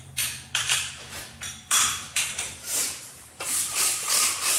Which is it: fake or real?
fake